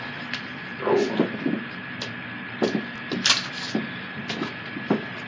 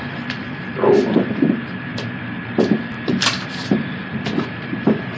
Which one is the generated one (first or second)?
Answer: second